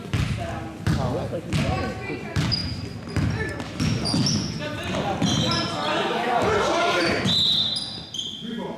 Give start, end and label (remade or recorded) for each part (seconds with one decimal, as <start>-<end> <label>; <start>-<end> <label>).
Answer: 0.0-8.8 recorded